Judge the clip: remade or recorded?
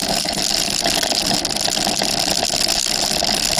recorded